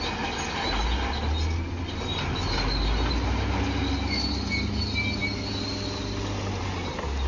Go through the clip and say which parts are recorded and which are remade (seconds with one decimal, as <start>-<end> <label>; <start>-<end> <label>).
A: 0.0-7.3 recorded